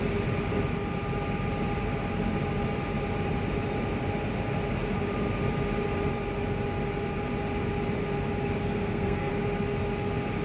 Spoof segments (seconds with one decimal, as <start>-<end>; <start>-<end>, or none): 8.6-9.3